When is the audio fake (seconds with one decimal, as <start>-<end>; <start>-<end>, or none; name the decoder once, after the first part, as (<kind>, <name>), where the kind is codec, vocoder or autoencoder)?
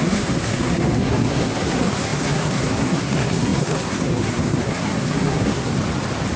0.0-5.7 (codec, SNAC)